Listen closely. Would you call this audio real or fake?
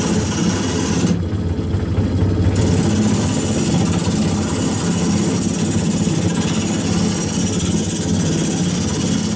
real